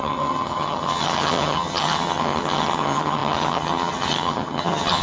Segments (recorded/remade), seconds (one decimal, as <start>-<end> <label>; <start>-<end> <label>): 0.0-5.0 remade